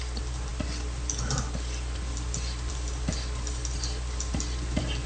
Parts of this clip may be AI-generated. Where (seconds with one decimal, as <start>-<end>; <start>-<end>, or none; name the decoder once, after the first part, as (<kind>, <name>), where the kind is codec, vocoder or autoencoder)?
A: none